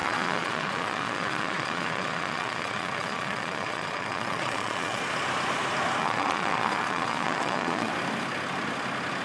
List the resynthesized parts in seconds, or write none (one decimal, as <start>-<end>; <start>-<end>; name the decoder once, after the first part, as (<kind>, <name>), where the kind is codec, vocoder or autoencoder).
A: 0.0-5.0 (vocoder, Vocos); 6.0-7.9